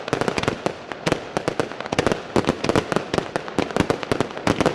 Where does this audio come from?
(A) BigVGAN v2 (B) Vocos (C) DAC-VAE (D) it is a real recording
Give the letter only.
D